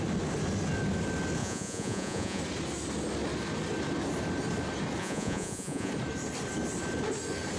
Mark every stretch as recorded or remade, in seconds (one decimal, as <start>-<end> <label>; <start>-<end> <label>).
0.0-1.4 recorded; 1.4-2.4 remade; 2.4-5.0 recorded; 5.0-5.9 remade; 5.9-7.6 recorded